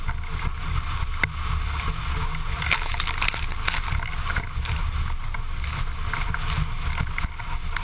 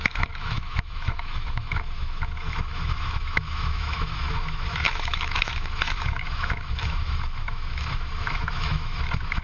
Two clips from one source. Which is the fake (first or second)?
second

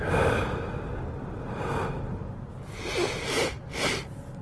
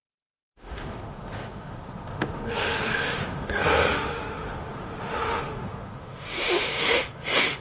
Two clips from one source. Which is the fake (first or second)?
second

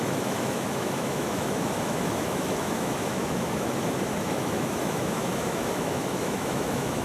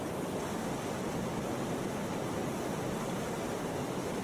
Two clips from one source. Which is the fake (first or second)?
first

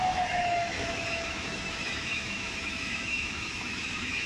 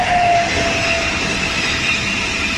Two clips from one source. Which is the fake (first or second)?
first